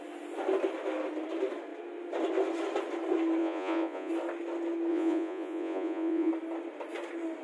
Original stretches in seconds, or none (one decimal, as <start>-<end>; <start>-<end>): 0.0-3.4; 4.1-4.9; 6.3-7.4